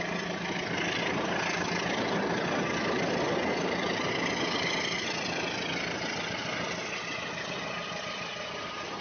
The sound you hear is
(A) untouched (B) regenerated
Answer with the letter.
A